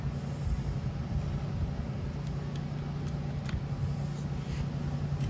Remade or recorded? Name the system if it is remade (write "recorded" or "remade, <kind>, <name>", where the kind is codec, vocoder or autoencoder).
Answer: recorded